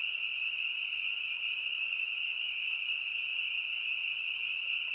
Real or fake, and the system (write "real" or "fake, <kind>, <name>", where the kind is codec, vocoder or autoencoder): real